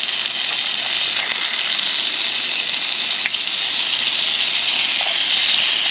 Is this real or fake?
real